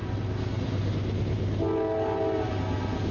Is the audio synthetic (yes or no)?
no